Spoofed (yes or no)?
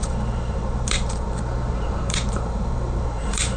yes